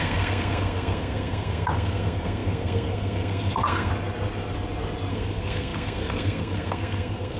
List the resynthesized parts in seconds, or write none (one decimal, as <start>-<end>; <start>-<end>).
0.0-3.9; 5.1-7.4